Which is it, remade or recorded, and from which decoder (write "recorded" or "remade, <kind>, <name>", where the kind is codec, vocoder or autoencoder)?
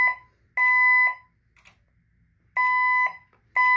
recorded